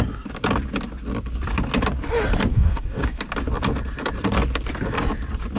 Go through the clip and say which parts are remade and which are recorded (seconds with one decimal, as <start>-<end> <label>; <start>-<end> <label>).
0.0-2.5 recorded; 2.5-3.2 remade; 3.2-5.6 recorded